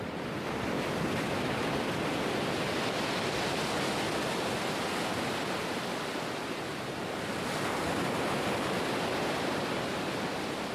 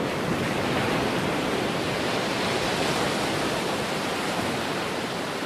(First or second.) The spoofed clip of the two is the second